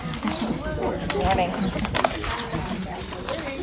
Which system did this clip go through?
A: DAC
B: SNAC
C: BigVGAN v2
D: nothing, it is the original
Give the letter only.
D